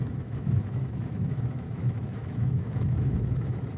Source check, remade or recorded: remade